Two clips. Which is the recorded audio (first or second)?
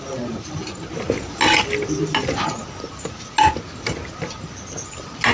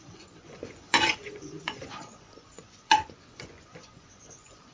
first